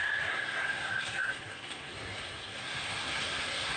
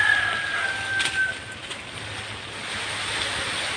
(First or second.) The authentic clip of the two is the second